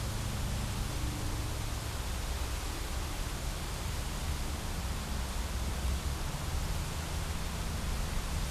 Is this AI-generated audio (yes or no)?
no